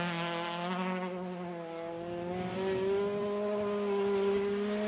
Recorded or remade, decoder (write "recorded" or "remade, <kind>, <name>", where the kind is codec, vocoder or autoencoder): recorded